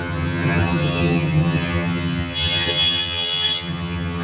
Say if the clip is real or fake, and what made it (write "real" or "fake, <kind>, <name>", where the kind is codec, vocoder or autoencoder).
fake, vocoder, HiFi-GAN